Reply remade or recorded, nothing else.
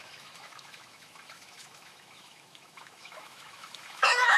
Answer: remade